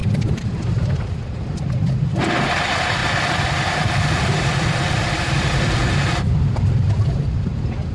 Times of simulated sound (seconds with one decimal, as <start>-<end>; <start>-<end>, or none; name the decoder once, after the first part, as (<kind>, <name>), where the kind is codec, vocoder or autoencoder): 0.0-2.2 (vocoder, BigVGAN v2); 3.0-4.6